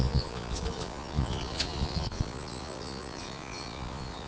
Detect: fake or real fake